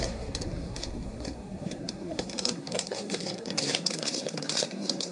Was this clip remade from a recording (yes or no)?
yes